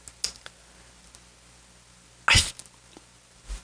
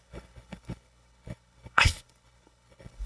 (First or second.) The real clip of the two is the first